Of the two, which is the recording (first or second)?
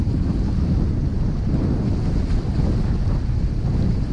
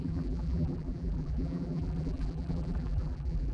first